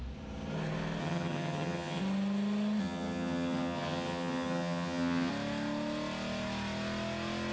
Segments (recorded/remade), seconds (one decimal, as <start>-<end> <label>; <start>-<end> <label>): 0.0-1.0 recorded; 1.0-2.0 remade; 2.0-2.8 recorded; 2.8-5.3 remade; 5.3-7.5 recorded